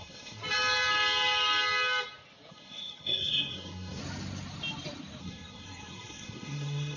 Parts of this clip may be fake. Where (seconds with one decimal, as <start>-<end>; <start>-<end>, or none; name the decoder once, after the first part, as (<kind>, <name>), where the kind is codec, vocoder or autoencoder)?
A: 0.0-0.4 (codec, SNAC); 2.5-4.0; 5.2-7.0